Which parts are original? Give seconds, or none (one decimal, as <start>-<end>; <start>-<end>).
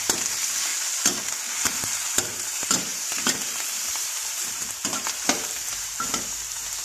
0.7-1.5